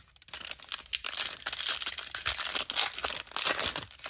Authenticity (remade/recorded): recorded